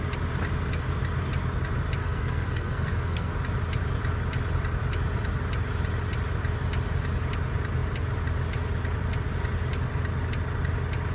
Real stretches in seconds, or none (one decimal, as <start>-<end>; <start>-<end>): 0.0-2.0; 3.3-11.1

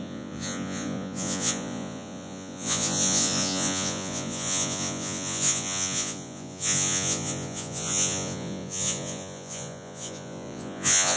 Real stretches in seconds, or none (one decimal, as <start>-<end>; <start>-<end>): none

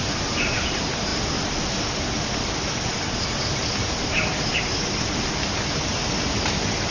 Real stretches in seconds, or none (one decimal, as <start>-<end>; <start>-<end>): 1.1-3.2

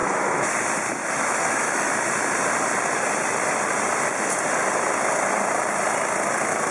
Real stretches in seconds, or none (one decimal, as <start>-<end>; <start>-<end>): 0.5-1.0; 1.9-6.7

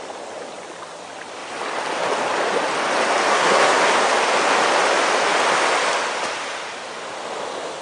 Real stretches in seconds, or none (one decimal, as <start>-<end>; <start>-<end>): 0.0-3.3; 3.8-7.8

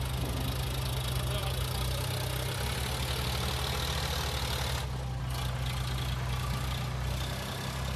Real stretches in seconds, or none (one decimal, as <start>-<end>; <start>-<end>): 0.0-8.0